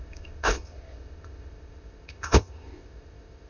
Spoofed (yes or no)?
yes